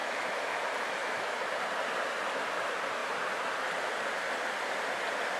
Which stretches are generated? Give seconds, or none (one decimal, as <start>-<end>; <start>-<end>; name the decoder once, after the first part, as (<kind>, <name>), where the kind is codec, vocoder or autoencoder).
0.0-0.6 (autoencoder, DAC-VAE); 1.0-1.5

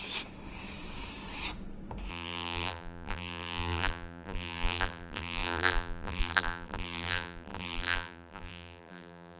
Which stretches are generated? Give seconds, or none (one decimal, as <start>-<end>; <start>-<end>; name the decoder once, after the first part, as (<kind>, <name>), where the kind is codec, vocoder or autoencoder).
2.1-9.4 (vocoder, BigVGAN v2)

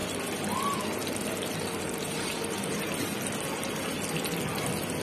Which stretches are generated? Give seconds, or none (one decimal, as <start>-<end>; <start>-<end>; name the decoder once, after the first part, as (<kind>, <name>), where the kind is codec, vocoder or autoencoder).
0.0-3.0 (vocoder, BigVGAN v2)

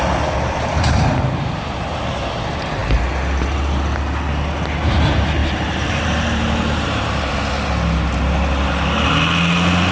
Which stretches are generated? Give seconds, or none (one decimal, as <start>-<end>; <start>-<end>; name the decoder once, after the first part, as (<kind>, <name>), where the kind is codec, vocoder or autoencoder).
5.4-7.3 (vocoder, BigVGAN v2)